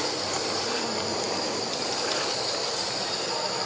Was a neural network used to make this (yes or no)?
no